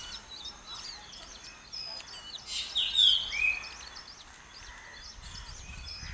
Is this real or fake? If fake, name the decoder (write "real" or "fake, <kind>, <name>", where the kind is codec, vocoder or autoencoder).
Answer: real